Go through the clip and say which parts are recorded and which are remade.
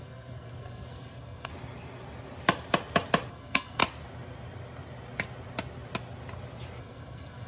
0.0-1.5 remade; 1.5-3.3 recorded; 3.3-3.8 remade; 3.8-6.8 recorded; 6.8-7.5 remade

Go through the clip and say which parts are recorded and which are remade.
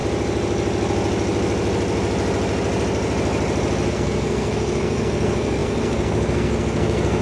0.0-3.9 recorded; 3.9-7.2 remade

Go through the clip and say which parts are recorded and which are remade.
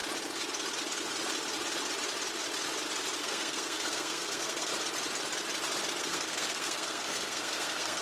0.0-3.2 recorded; 3.2-4.7 remade; 4.7-6.0 recorded; 6.0-8.0 remade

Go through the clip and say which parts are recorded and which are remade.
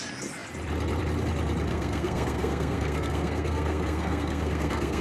0.0-1.7 recorded; 1.7-5.0 remade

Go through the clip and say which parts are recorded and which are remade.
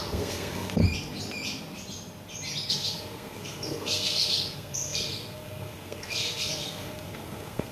0.0-0.8 remade; 0.8-2.7 recorded; 2.7-7.7 remade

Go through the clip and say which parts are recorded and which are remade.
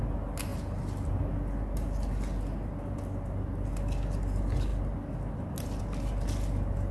0.0-6.9 recorded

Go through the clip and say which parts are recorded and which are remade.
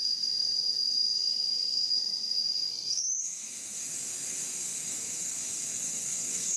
0.0-6.6 remade